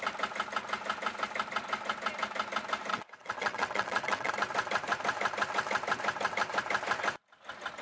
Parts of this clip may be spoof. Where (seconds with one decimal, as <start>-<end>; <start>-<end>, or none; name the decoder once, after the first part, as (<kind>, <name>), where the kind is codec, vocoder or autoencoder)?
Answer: 2.9-4.3 (vocoder, WaveNeXt)